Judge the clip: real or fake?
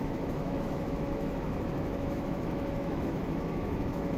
fake